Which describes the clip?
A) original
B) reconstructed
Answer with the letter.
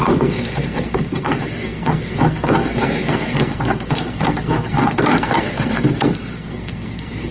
B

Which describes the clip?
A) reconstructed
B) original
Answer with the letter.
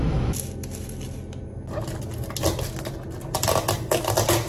B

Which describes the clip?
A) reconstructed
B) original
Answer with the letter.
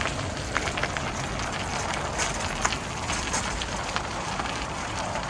B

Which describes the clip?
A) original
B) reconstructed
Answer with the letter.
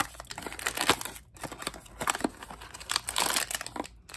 A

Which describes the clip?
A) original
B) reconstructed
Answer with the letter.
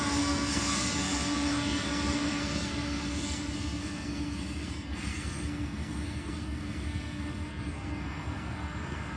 B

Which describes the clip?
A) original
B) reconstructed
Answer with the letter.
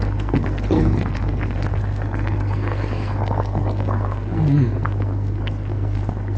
B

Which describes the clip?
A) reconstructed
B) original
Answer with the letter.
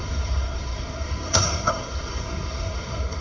A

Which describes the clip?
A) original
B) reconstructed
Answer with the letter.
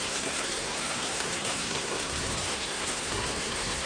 B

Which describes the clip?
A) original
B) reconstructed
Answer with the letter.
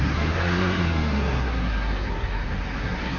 B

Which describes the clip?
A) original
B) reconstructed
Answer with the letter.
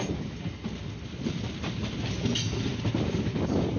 A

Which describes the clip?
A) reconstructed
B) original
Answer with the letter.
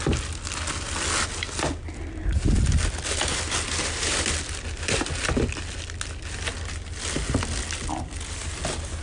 B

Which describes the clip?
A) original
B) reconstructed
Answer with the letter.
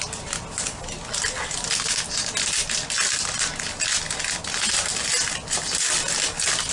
A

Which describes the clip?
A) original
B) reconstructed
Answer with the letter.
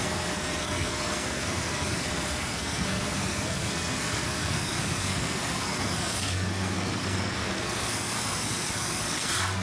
B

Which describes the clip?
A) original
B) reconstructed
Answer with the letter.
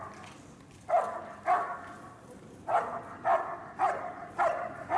A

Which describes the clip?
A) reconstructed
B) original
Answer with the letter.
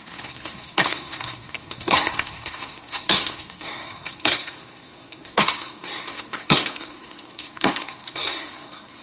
A